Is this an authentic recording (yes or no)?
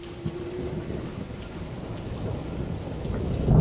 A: yes